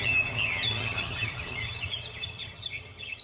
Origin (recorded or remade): remade